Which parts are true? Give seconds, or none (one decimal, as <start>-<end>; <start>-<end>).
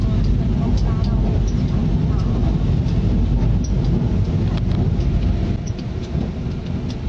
0.0-7.1